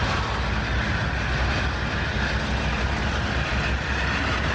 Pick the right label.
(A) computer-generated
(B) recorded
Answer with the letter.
B